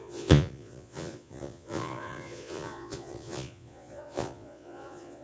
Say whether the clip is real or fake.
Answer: fake